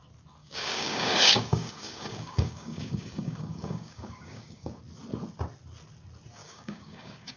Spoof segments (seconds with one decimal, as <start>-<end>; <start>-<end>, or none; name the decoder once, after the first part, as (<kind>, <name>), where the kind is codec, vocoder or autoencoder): 0.4-4.8 (codec, DAC); 6.4-7.4